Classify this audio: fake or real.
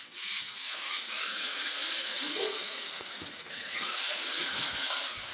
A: fake